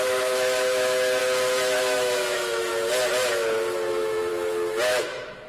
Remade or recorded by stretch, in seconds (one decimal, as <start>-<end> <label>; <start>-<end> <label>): 0.0-1.2 remade; 1.2-1.8 recorded; 1.8-2.7 remade; 2.7-3.9 recorded; 3.9-4.3 remade; 4.3-5.0 recorded; 5.0-5.5 remade